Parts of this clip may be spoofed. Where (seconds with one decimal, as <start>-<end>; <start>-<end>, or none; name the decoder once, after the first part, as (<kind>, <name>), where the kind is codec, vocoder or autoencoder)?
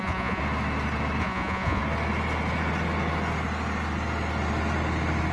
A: 0.0-0.4 (vocoder, Vocos); 1.2-1.8